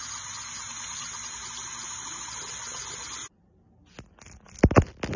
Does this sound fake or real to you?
real